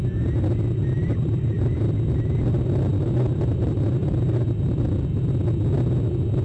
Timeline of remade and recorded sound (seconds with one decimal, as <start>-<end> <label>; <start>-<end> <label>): 0.0-1.0 recorded; 1.0-4.8 remade; 4.8-6.4 recorded